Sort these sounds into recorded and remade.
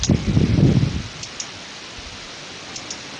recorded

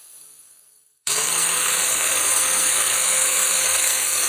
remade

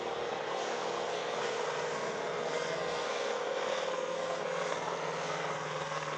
remade